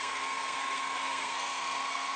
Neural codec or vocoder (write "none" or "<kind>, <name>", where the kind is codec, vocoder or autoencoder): codec, SNAC